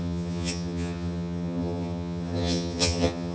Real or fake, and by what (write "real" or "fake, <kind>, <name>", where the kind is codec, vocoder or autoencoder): fake, vocoder, HiFi-GAN